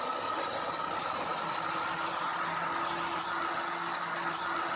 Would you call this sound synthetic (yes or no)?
no